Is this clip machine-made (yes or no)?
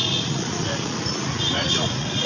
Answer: yes